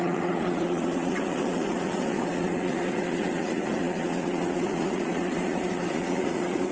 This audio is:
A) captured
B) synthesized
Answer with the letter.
B